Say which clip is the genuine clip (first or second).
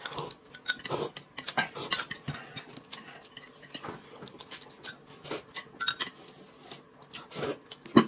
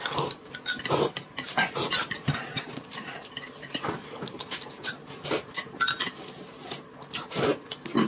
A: first